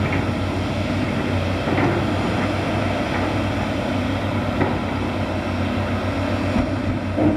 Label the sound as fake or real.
real